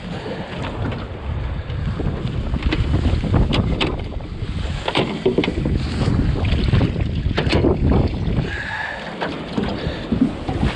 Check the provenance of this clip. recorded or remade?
recorded